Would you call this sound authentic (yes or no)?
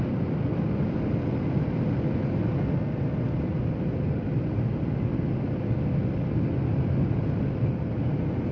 yes